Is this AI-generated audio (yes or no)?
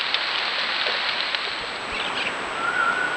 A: no